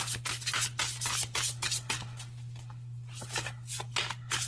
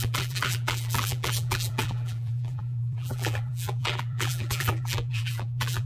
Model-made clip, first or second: second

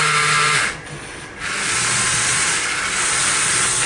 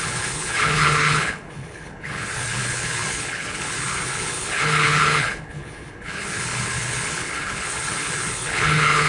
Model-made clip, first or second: second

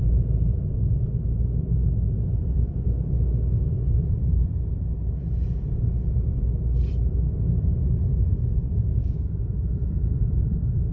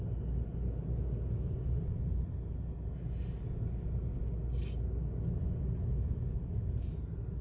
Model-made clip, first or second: first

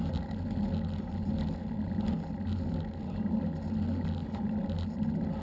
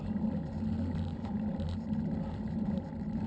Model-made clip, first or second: second